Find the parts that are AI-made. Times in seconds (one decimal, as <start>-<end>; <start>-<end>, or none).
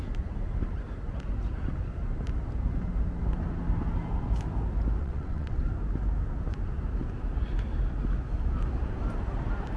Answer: 5.0-5.6